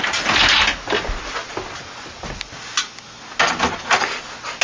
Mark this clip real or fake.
real